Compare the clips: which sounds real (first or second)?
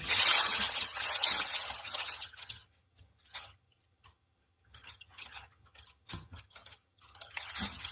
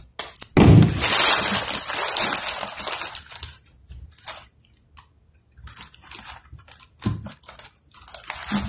second